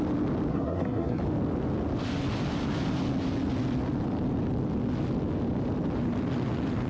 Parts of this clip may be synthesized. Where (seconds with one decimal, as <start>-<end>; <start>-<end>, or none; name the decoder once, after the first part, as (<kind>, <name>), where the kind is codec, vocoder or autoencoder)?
0.5-1.2 (codec, SNAC)